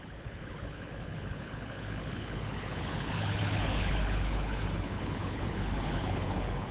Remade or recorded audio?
remade